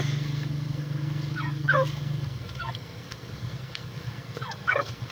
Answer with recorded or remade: remade